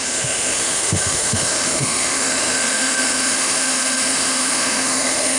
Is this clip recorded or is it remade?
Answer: remade